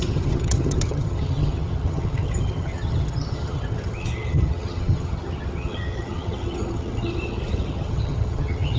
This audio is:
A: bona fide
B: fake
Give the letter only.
B